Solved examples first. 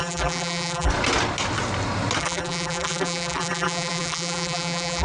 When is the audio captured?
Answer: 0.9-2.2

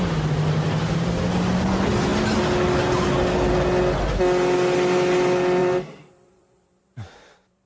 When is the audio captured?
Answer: 0.0-5.6

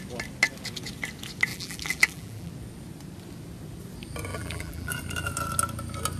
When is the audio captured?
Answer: 0.0-1.5; 2.5-4.3; 5.0-6.2